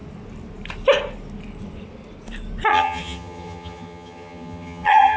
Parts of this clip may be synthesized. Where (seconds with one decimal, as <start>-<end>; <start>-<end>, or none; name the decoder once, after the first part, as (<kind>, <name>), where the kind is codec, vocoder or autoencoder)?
2.7-5.2 (vocoder, HiFi-GAN)